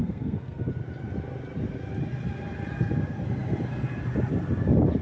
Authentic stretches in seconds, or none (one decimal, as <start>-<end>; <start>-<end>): 0.7-5.0